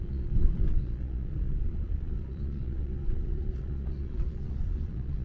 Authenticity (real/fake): fake